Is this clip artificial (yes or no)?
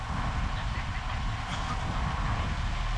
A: no